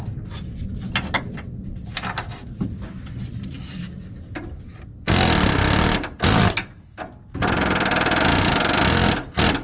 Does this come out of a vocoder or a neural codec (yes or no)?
no